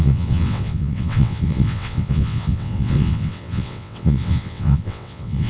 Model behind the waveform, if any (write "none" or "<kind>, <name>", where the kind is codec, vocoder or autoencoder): vocoder, WaveNeXt